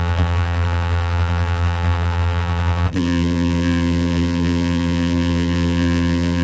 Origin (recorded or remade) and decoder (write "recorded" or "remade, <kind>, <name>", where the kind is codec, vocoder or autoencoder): remade, vocoder, BigVGAN v2